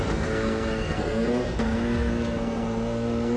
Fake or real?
fake